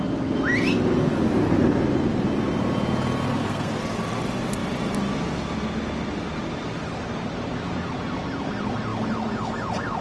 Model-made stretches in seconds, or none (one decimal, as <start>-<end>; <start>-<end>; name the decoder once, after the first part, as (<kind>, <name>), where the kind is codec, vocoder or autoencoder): 3.3-3.8 (codec, SNAC)